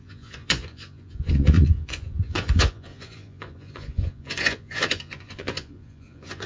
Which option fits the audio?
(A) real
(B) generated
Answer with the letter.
B